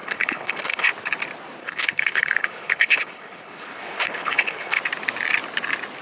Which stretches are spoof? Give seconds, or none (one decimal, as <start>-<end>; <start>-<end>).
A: 0.0-0.9; 1.6-4.8